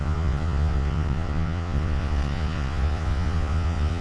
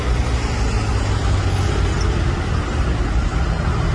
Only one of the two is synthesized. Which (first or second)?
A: first